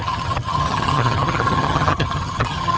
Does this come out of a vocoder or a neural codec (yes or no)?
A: yes